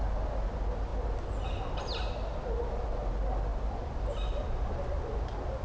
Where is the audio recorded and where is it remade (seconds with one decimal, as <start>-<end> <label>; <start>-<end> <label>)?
0.0-5.6 recorded